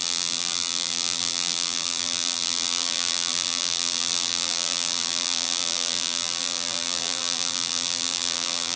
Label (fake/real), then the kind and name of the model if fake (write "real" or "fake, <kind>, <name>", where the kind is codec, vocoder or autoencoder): fake, vocoder, BigVGAN v2